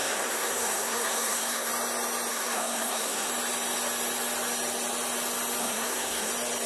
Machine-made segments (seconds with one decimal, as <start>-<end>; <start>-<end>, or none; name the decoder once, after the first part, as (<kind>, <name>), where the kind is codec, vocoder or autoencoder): 0.0-1.7 (codec, SNAC); 2.3-3.3; 5.6-6.3